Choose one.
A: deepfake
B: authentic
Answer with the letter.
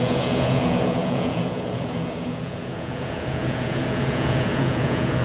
A